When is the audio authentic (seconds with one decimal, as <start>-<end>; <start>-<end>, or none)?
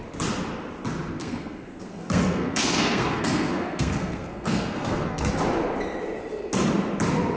0.0-1.2; 5.3-7.4